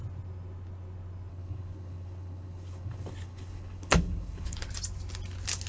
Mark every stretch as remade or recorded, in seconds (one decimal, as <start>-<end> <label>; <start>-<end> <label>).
0.0-1.3 recorded; 1.3-4.7 remade; 4.7-5.7 recorded